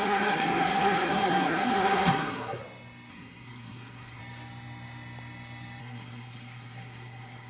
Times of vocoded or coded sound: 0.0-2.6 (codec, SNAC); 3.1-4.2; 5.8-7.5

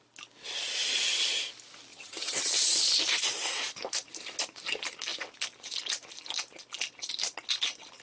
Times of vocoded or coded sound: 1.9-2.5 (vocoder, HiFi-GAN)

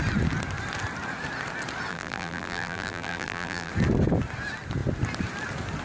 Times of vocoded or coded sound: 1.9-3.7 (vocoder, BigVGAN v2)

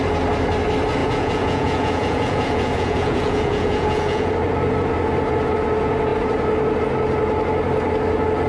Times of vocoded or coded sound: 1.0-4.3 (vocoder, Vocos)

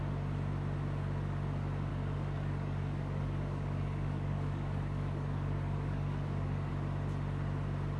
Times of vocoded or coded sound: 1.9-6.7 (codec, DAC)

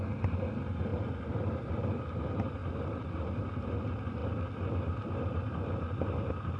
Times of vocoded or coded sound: none